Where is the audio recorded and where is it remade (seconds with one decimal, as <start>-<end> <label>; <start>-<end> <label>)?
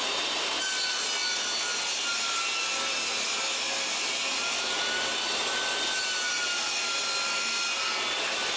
0.0-8.6 recorded